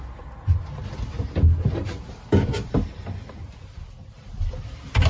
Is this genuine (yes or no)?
yes